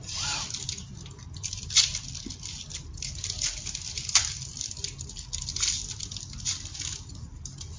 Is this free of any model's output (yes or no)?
yes